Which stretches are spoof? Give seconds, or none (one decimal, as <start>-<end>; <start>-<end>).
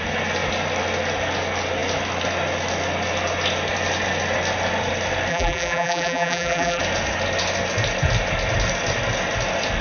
5.3-6.8